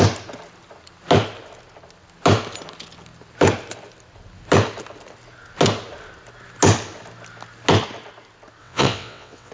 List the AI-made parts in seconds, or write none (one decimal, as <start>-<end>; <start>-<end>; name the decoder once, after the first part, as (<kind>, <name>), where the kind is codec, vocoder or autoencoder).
8.6-9.5 (vocoder, WaveNeXt)

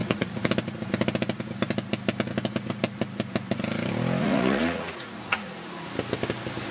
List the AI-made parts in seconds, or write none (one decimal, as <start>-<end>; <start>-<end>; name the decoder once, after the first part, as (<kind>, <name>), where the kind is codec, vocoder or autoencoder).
0.0-0.5 (vocoder, Vocos); 4.2-5.9

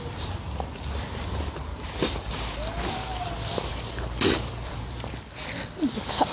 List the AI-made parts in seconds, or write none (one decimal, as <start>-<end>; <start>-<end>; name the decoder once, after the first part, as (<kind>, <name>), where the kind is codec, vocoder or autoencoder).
1.7-2.3 (vocoder, BigVGAN v2); 3.7-5.1

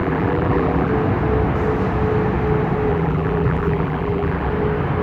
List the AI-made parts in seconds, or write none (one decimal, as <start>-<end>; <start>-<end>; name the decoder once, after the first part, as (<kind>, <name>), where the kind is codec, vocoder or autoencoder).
0.0-0.9 (vocoder, BigVGAN v2); 2.9-4.5

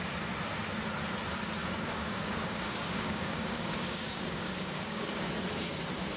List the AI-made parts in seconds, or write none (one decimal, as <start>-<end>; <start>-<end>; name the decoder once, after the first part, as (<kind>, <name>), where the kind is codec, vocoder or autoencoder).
1.6-5.3 (codec, DAC)

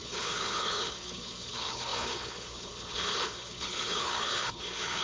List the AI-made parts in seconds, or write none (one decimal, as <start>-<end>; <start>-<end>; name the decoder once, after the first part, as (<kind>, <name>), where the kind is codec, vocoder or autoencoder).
0.0-5.0 (codec, HILCodec)

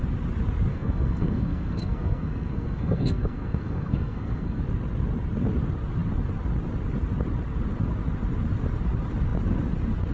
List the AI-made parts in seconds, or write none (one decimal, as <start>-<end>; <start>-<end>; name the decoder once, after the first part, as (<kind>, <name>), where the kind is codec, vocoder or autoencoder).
0.7-4.6 (codec, SNAC)

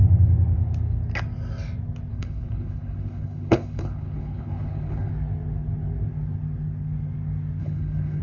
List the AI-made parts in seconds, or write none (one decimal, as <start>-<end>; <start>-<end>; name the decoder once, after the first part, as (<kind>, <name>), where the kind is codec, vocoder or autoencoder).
2.1-5.1 (codec, HILCodec); 7.6-8.2